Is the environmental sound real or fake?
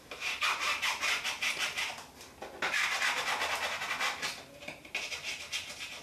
real